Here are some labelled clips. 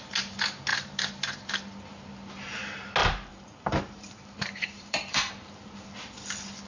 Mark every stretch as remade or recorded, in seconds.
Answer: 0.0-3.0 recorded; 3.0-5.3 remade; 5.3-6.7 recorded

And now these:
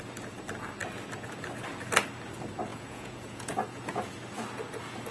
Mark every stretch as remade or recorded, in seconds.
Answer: 0.0-2.7 recorded; 2.7-4.1 remade; 4.1-5.1 recorded